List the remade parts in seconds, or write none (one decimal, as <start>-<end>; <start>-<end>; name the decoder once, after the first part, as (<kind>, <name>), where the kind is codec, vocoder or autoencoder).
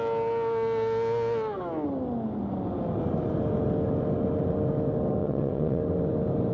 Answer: 5.2-5.8 (vocoder, WaveNeXt)